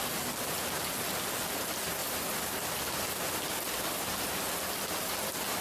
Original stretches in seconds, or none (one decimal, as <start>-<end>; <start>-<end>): 0.0-5.6